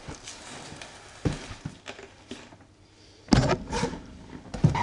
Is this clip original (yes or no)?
yes